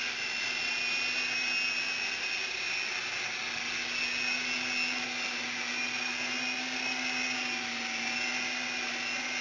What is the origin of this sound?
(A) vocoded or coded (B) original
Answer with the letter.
B